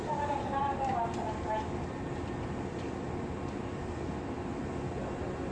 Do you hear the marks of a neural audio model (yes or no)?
no